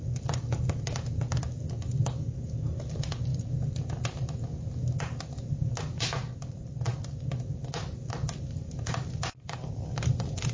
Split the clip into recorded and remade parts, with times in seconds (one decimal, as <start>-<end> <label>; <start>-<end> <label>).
0.0-10.5 recorded